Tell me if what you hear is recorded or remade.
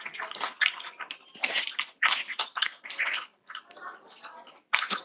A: remade